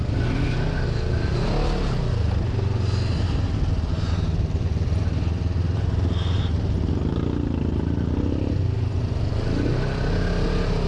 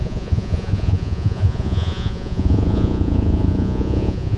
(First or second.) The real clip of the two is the first